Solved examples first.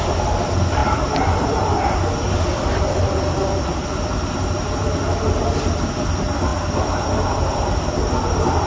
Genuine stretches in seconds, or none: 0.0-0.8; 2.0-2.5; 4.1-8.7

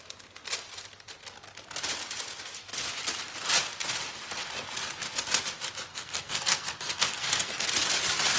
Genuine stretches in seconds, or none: 0.0-5.9; 7.7-8.4

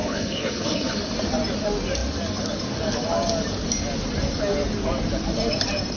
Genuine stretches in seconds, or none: 1.0-6.0

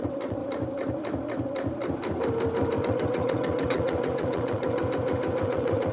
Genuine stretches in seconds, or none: 0.4-2.8; 4.8-5.4